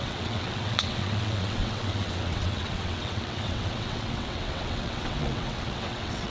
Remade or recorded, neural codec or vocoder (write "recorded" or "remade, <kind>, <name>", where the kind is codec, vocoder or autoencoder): remade, vocoder, WaveNeXt